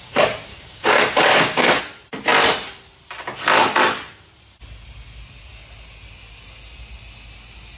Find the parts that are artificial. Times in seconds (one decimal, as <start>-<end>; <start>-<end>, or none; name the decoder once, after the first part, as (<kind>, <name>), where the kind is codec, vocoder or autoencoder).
0.5-1.8 (codec, DAC)